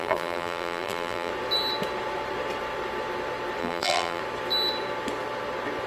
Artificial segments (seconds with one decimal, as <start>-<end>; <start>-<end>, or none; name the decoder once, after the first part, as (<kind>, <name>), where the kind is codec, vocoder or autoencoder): 0.0-1.3 (vocoder, BigVGAN v2); 3.6-4.2